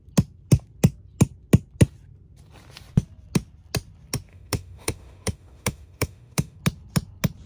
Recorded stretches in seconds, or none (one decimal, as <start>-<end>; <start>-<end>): 0.0-4.3; 6.6-7.5